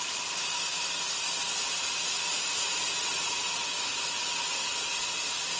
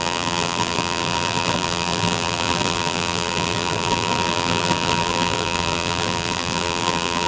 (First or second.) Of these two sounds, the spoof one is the second